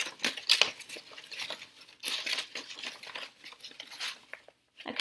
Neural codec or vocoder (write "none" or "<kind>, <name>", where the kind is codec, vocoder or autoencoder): none